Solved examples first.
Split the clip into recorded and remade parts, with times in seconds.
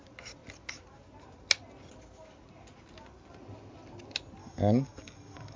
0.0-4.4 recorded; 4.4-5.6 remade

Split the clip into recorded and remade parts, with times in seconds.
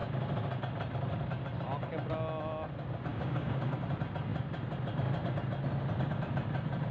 0.0-3.1 recorded; 3.1-3.8 remade; 3.8-6.9 recorded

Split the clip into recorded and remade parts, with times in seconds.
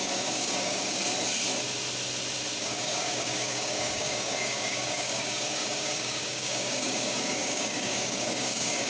0.0-1.0 remade; 1.0-2.6 recorded; 2.6-8.9 remade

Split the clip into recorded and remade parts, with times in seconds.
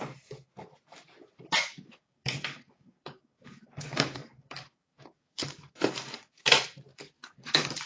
0.0-1.7 recorded; 1.7-6.4 remade; 6.4-6.9 recorded; 6.9-7.9 remade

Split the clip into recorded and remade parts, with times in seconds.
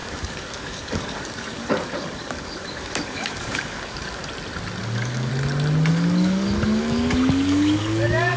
0.0-4.2 remade; 4.2-4.8 recorded; 4.8-5.3 remade; 5.3-5.9 recorded; 5.9-8.4 remade